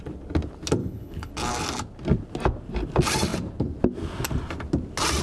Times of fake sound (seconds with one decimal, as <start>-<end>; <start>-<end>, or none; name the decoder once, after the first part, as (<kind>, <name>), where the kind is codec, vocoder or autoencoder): 0.8-1.3 (codec, HILCodec)